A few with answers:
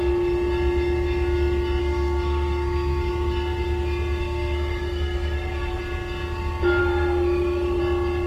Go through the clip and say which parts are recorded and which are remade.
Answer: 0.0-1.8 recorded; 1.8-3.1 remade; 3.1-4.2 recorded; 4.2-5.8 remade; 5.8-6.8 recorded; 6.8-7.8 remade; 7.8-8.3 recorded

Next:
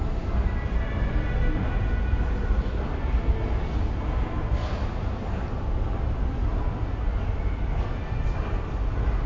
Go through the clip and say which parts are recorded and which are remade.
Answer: 0.0-9.3 recorded

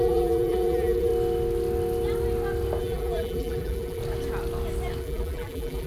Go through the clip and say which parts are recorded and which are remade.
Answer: 0.0-1.1 remade; 1.1-2.8 recorded; 2.8-4.0 remade; 4.0-5.0 recorded; 5.0-5.9 remade

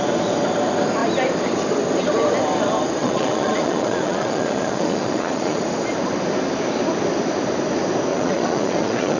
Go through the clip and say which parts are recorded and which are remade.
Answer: 0.0-3.0 recorded; 3.0-5.6 remade; 5.6-8.1 recorded; 8.1-9.2 remade

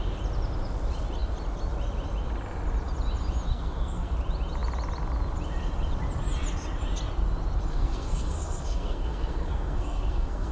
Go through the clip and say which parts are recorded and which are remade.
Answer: 0.0-3.5 recorded; 3.5-4.1 remade; 4.1-7.7 recorded; 7.7-10.5 remade

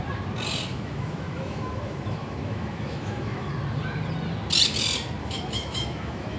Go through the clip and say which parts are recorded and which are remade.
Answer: 0.0-0.7 recorded; 0.7-3.5 remade; 3.5-5.2 recorded; 5.2-6.4 remade

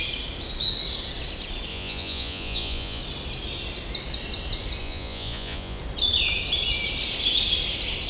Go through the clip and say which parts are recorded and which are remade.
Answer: 0.0-1.7 recorded; 1.7-3.0 remade; 3.0-4.8 recorded; 4.8-5.8 remade; 5.8-8.1 recorded